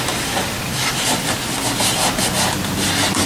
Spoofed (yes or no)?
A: no